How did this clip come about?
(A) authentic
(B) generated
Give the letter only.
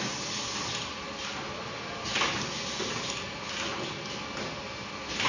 A